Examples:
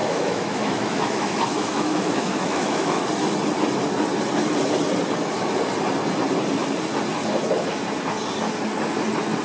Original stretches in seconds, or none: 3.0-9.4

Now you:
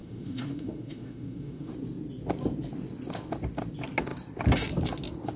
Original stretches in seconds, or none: 1.7-5.4

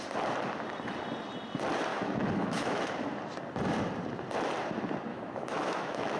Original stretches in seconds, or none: 0.0-1.9; 2.9-5.1

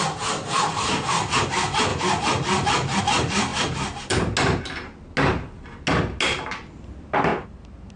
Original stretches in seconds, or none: 0.0-8.0

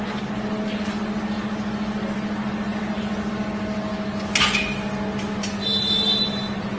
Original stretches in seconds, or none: 0.0-6.8